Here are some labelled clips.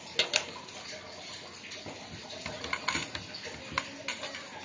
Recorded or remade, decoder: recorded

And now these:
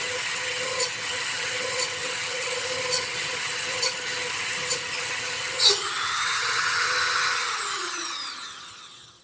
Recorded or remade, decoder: remade, vocoder, HiFi-GAN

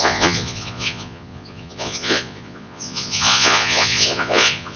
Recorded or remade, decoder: remade, vocoder, Vocos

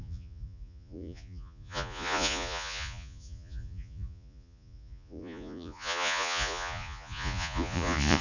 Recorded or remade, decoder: remade, vocoder, Vocos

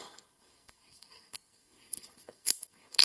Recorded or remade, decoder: remade, codec, SNAC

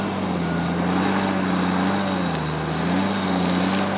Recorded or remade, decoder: recorded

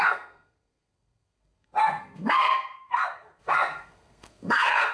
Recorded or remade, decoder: remade, codec, SNAC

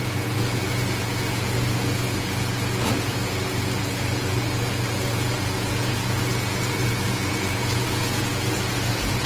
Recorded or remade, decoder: remade, vocoder, Vocos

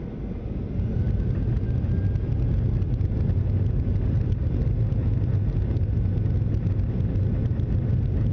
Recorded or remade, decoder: recorded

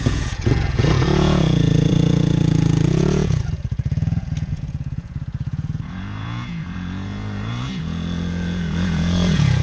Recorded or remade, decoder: remade, vocoder, Vocos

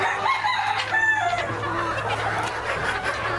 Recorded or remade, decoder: recorded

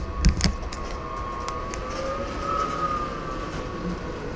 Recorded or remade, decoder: recorded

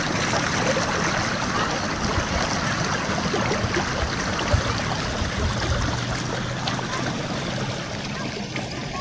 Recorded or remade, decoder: recorded